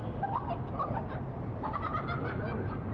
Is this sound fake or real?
real